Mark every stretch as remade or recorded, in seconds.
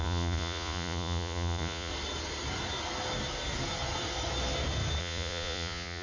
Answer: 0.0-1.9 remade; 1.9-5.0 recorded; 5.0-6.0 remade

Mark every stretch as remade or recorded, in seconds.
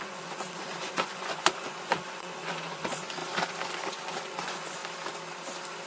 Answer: 0.0-3.2 remade; 3.2-3.9 recorded; 3.9-4.8 remade; 4.8-5.9 recorded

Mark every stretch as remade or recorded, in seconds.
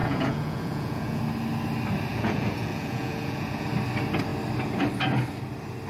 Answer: 0.0-1.2 remade; 1.2-2.1 recorded; 2.1-3.7 remade; 3.7-5.9 recorded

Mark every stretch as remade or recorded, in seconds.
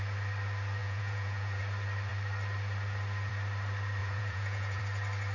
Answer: 0.0-0.8 recorded; 0.8-1.6 remade; 1.6-4.0 recorded; 4.0-4.8 remade; 4.8-5.3 recorded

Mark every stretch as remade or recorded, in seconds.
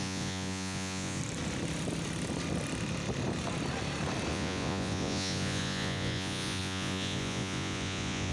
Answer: 0.0-1.2 remade; 1.2-4.3 recorded; 4.3-8.3 remade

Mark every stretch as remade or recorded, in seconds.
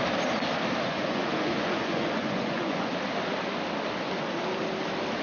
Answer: 0.0-0.9 recorded; 0.9-2.9 remade; 2.9-5.2 recorded